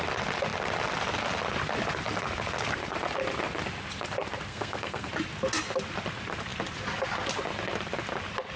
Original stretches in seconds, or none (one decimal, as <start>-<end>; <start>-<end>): 0.0-4.5; 5.1-8.6